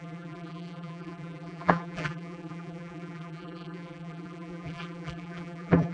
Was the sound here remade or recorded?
remade